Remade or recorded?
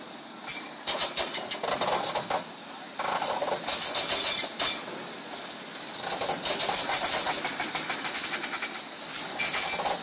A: recorded